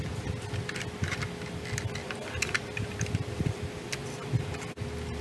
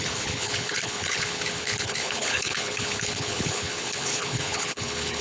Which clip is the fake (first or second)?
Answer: second